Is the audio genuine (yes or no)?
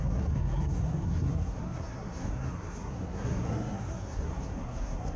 no